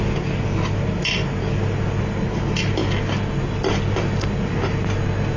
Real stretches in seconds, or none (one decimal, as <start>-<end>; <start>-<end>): 0.0-5.4